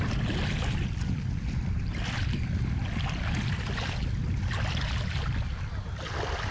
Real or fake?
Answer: real